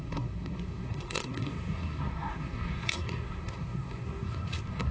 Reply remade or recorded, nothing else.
remade